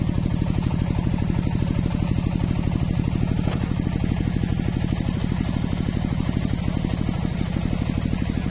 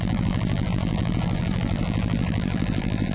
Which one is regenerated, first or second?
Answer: second